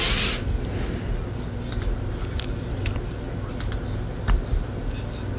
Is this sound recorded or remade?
recorded